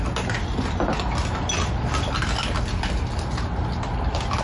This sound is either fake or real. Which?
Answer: real